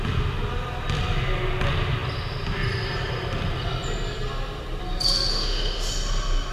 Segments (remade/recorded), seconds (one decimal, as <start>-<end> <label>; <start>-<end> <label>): 0.0-5.3 recorded; 5.3-5.9 remade; 5.9-6.5 recorded